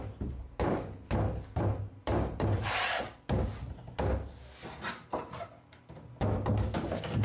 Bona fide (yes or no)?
yes